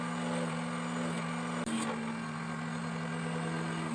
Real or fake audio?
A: real